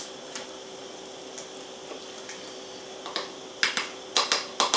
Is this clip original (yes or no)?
yes